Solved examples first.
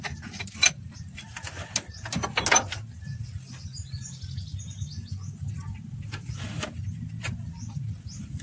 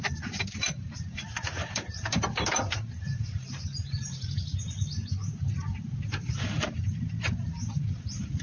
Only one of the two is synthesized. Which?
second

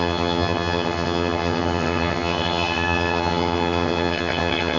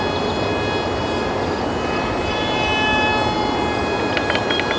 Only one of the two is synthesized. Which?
first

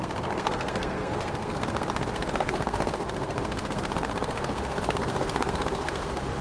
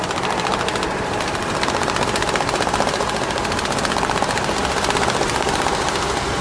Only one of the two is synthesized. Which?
first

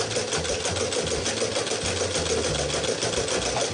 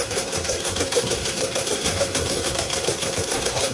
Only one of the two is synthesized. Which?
second